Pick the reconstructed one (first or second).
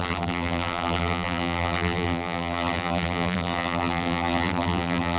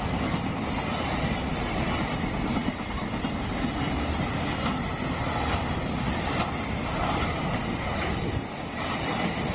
first